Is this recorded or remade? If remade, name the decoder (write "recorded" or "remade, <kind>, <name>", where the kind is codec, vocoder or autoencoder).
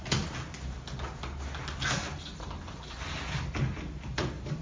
recorded